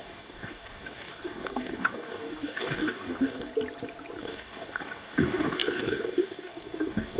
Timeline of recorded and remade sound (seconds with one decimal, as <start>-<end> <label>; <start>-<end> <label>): 0.0-3.5 remade; 3.5-4.2 recorded; 4.2-7.2 remade